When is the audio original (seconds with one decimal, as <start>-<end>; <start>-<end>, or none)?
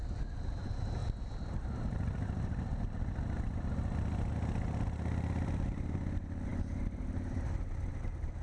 0.0-1.0; 4.3-8.4